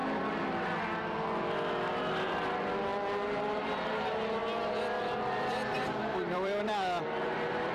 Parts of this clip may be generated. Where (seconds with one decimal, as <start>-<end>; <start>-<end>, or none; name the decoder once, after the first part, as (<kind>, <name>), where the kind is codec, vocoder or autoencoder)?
2.0-2.9 (vocoder, BigVGAN v2); 3.6-4.4; 5.3-7.7